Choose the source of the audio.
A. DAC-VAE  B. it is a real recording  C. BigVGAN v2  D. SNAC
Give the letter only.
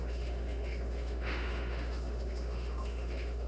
A